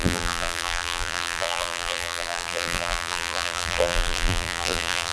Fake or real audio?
fake